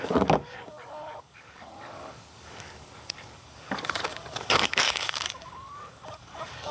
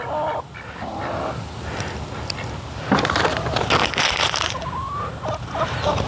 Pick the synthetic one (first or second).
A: first